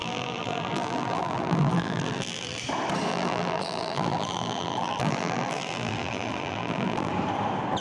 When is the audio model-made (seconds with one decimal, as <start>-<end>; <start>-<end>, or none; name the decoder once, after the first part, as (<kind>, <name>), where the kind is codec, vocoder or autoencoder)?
0.0-2.6 (vocoder, BigVGAN v2); 3.1-7.1